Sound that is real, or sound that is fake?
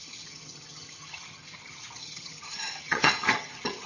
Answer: fake